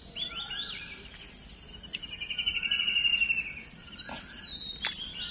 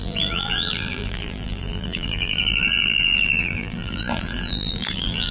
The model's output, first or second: second